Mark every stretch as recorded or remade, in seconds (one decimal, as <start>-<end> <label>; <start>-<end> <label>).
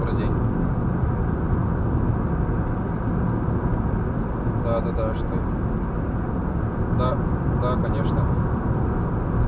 0.0-9.5 recorded